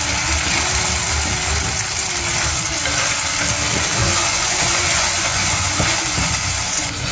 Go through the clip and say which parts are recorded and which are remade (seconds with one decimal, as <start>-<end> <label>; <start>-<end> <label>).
0.0-4.0 recorded; 4.0-7.1 remade